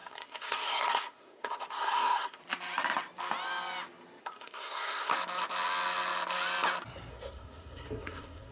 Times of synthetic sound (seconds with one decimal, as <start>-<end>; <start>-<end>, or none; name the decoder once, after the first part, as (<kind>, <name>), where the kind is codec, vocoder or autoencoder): 0.0-2.4 (codec, SNAC); 4.2-5.1; 7.1-8.5